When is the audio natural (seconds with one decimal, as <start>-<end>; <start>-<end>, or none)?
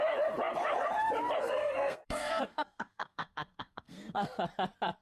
0.0-1.4; 4.4-5.0